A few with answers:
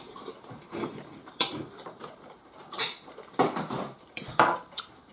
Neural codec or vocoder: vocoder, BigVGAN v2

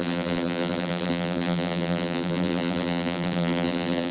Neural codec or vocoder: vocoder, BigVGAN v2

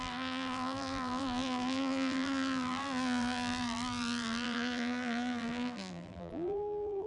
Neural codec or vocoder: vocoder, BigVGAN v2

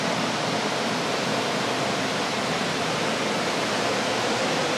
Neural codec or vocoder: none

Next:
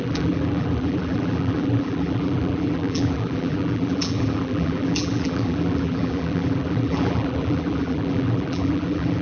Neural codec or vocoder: vocoder, BigVGAN v2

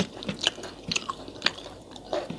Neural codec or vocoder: vocoder, BigVGAN v2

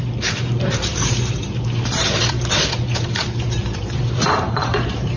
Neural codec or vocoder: vocoder, BigVGAN v2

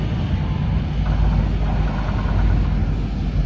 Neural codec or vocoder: none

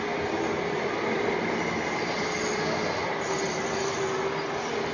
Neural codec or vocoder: none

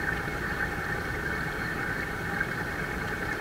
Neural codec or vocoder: vocoder, BigVGAN v2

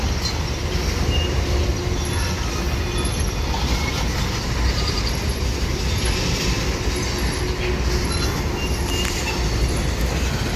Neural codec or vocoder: none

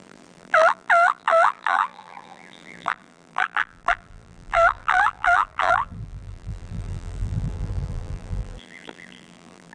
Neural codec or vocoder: vocoder, BigVGAN v2